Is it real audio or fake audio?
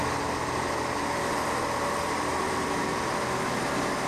real